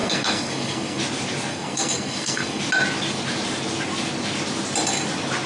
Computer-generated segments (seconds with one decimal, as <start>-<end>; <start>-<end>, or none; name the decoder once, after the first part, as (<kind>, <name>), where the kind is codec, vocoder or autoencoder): 0.0-1.0 (codec, SNAC); 1.5-2.6